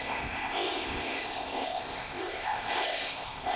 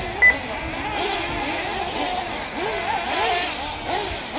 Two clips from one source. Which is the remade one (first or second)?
first